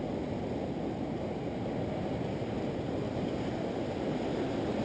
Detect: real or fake real